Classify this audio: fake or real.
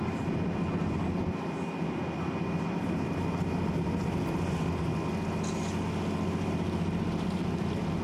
real